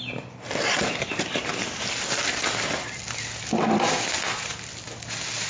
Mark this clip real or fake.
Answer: real